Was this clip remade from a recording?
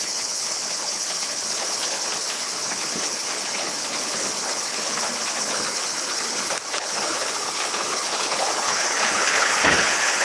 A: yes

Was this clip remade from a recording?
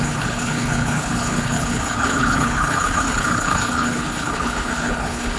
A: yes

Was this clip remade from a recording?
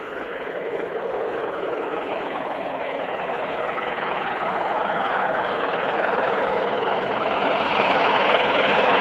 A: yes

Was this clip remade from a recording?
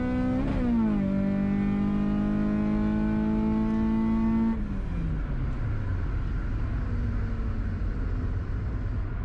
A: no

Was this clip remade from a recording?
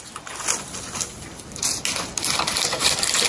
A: no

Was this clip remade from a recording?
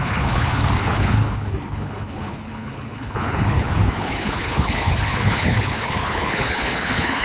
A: yes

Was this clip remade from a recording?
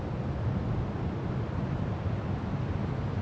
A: no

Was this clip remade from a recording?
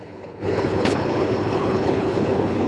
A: yes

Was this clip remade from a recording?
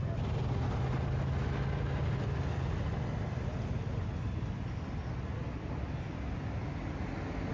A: no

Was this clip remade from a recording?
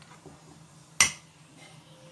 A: no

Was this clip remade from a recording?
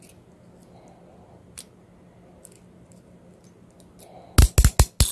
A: no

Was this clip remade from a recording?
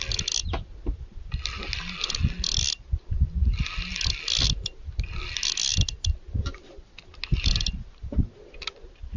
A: no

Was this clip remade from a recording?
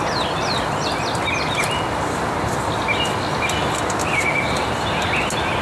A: no